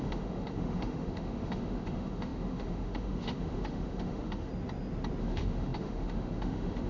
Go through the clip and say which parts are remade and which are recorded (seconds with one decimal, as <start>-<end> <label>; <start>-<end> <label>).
0.0-4.5 remade; 4.5-5.2 recorded; 5.2-6.9 remade